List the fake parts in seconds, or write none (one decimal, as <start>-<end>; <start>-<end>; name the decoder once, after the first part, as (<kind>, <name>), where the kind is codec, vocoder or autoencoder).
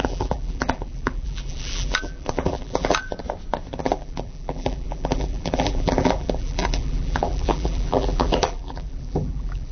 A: 0.0-3.1 (vocoder, BigVGAN v2); 3.8-9.7